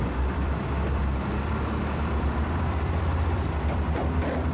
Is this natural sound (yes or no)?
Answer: no